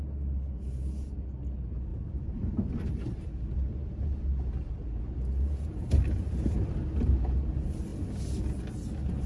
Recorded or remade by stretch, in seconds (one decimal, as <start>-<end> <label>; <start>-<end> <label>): 0.0-1.9 recorded; 1.9-6.7 remade; 6.7-9.3 recorded